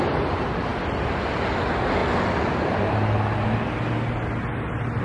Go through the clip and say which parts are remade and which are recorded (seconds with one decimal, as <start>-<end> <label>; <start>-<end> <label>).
0.0-5.0 recorded